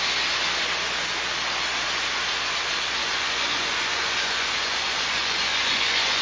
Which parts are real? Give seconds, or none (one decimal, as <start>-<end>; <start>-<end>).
0.0-3.0